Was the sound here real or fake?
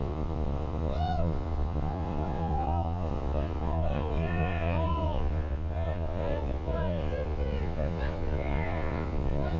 fake